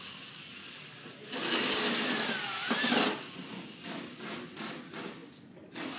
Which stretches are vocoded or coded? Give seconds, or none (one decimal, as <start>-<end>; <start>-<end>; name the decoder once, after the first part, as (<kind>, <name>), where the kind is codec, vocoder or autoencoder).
none